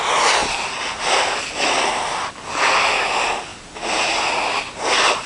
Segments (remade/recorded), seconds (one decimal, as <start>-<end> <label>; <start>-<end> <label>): 0.0-5.3 recorded